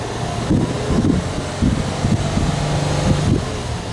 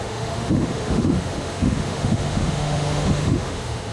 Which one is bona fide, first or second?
first